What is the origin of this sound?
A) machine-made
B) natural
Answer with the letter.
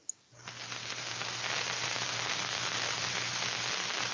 B